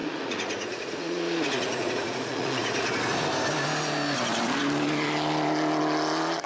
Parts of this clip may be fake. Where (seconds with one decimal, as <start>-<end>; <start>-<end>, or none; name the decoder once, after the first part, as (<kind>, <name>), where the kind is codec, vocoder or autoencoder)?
0.0-3.0 (vocoder, Vocos)